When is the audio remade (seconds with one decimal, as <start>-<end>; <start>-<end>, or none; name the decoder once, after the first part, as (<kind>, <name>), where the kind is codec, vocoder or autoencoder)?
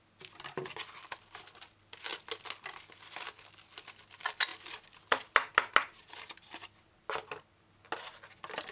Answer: none